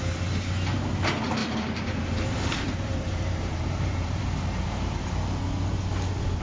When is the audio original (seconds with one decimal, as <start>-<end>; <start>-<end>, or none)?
0.0-1.4; 5.1-6.4